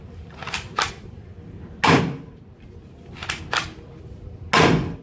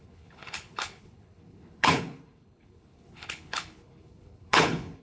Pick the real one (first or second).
first